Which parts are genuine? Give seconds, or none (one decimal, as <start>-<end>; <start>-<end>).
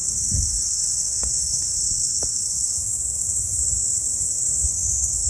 none